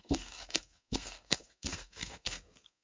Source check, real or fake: fake